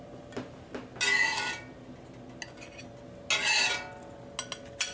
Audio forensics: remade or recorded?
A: recorded